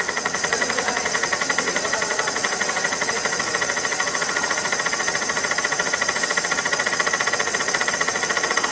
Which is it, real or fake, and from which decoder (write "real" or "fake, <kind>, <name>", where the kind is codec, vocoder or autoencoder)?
fake, vocoder, Vocos